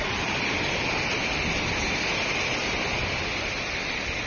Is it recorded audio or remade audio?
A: recorded